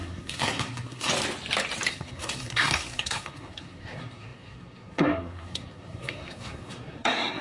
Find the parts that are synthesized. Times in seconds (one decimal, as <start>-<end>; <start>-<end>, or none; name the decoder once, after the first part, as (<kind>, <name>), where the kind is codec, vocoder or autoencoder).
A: 0.0-1.1 (codec, SNAC); 1.9-7.4